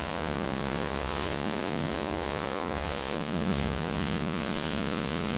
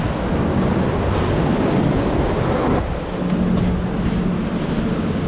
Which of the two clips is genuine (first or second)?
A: second